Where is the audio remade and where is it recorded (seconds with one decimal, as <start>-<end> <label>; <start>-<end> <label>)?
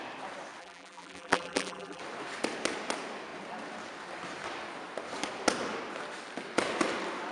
0.0-0.6 recorded; 0.6-2.0 remade; 2.0-7.3 recorded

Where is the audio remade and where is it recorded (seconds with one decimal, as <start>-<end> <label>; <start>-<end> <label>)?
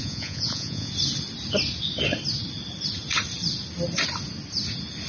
0.0-0.9 remade; 0.9-5.1 recorded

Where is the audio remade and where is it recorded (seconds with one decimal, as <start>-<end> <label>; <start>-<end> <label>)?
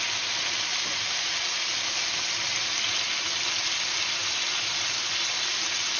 0.0-6.0 recorded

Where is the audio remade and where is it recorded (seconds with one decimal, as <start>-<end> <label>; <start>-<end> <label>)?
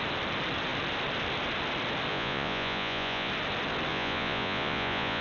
0.0-2.1 recorded; 2.1-3.3 remade; 3.3-3.9 recorded; 3.9-5.2 remade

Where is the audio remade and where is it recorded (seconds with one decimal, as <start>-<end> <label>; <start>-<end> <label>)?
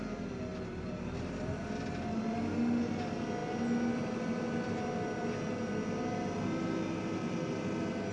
0.0-8.1 recorded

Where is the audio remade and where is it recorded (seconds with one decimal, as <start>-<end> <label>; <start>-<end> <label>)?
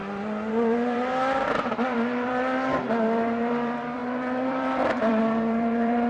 0.0-0.5 recorded; 0.5-6.1 remade